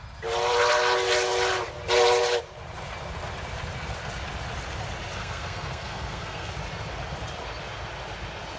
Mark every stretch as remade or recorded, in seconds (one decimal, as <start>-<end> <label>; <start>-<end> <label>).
0.0-5.2 recorded; 5.2-6.5 remade; 6.5-8.6 recorded